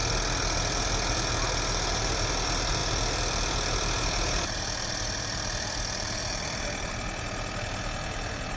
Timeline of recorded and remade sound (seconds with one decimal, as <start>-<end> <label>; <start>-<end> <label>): 0.0-2.8 recorded; 2.8-6.9 remade; 6.9-8.6 recorded